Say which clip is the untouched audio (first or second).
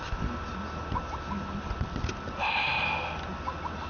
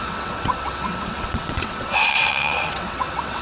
first